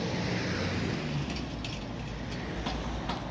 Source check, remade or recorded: recorded